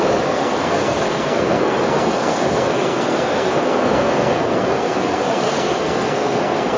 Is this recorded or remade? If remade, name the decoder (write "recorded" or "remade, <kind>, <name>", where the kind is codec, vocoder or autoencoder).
remade, codec, SNAC